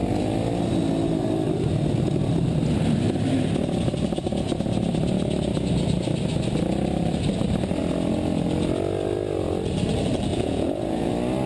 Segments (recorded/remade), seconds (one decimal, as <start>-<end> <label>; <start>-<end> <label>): 0.0-10.3 recorded; 10.3-11.1 remade; 11.1-11.5 recorded